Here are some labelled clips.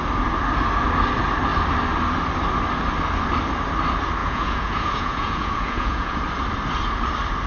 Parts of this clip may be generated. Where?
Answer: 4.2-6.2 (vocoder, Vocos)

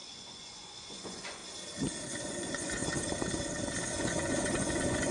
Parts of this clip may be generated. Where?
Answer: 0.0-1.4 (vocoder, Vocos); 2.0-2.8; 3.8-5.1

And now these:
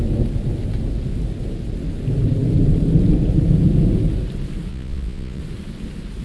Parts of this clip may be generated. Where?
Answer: 4.7-5.4 (vocoder, Vocos)

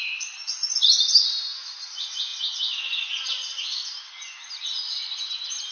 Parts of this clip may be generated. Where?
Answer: none

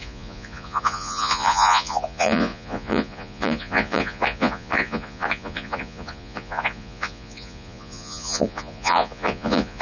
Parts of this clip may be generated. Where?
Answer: 0.0-9.8 (vocoder, Vocos)

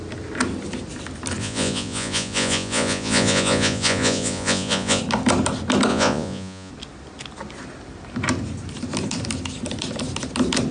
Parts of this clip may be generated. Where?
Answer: 1.4-5.0 (vocoder, Vocos); 5.9-6.7